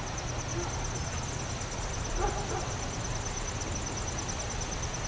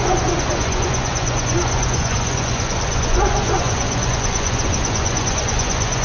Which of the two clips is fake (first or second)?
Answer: second